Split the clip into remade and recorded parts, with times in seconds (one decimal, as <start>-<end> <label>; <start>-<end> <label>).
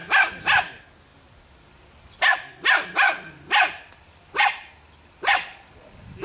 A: 0.0-0.6 remade; 0.6-1.1 recorded; 1.1-4.8 remade; 4.8-6.2 recorded